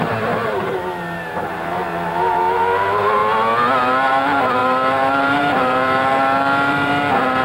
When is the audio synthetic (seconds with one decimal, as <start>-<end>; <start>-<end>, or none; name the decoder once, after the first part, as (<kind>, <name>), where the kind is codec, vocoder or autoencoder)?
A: 0.0-3.2 (vocoder, BigVGAN v2); 3.8-7.4